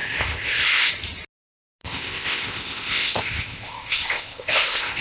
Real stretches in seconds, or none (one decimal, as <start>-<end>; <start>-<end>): 0.9-1.8